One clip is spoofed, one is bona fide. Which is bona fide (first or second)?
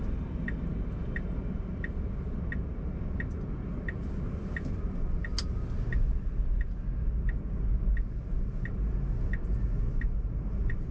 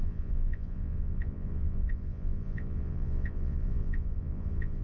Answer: first